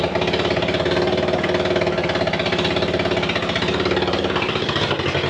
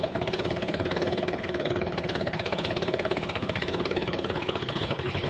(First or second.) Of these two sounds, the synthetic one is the second